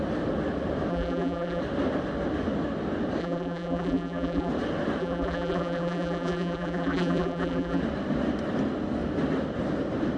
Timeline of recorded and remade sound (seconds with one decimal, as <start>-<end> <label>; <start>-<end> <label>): 0.0-0.9 recorded; 0.9-1.6 remade; 1.6-3.2 recorded; 3.2-4.5 remade; 4.5-5.0 recorded; 5.0-7.8 remade; 7.8-10.2 recorded